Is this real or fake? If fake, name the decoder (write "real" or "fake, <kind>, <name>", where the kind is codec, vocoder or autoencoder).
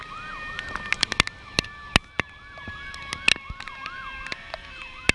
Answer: real